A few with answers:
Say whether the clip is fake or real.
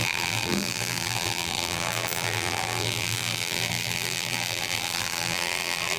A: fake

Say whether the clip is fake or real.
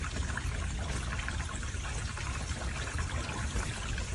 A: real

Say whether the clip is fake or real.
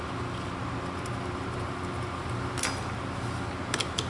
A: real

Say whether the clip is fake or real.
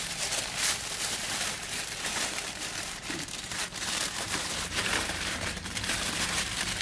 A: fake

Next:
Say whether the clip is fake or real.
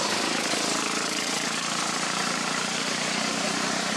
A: fake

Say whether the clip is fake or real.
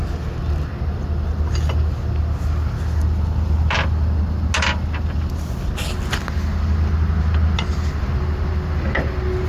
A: real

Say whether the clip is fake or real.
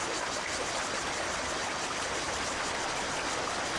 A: real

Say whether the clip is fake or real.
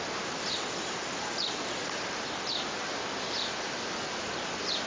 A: real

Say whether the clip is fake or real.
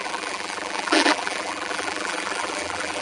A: fake